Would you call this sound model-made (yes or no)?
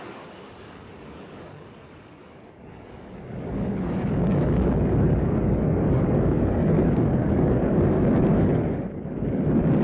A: yes